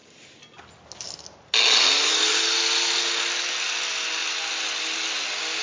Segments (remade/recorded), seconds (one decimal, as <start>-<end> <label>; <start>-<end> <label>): 0.0-5.6 recorded